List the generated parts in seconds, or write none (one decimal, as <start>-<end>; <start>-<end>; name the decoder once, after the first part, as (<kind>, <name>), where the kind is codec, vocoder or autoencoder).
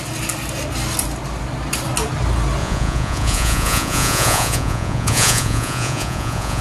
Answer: 2.6-6.6 (vocoder, Vocos)